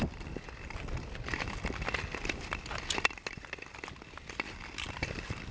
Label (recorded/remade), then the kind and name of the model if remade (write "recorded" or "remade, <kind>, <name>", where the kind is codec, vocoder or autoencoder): recorded